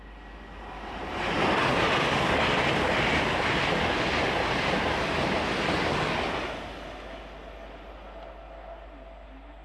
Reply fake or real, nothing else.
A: real